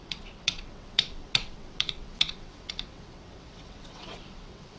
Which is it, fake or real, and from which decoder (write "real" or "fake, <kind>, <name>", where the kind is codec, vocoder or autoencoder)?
fake, vocoder, WaveNeXt